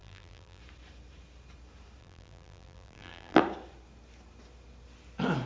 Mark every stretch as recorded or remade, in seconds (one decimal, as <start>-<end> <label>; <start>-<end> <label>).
0.0-0.6 remade; 0.6-2.0 recorded; 2.0-3.4 remade; 3.4-5.5 recorded